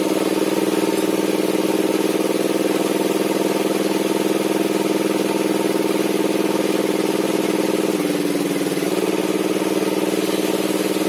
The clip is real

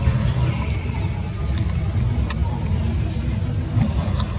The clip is real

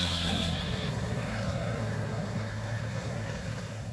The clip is fake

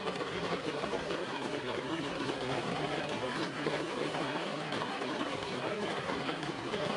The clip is fake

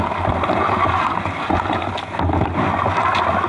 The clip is real